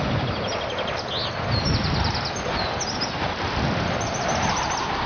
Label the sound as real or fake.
real